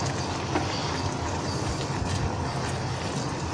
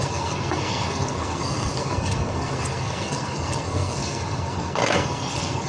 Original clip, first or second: first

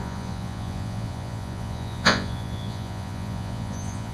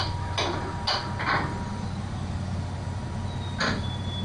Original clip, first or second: second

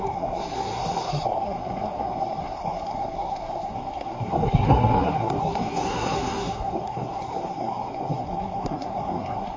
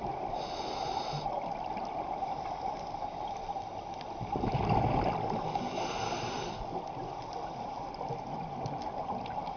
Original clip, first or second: second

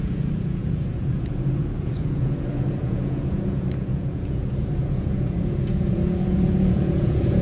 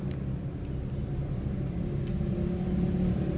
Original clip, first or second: second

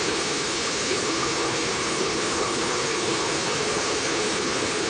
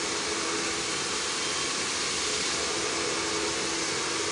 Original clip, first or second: second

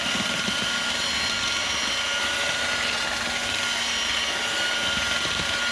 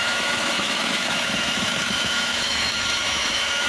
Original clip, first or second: first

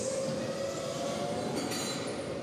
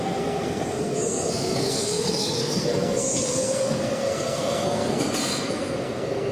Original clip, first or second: first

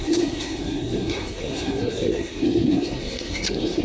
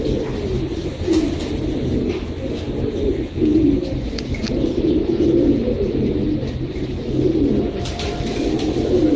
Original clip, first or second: second